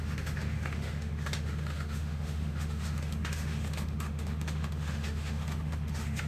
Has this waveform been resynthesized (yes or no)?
yes